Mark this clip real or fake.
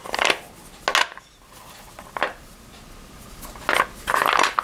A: real